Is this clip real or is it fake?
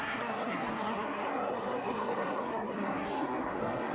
fake